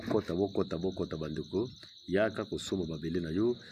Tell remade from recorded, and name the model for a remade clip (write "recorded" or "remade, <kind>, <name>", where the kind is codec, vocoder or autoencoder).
recorded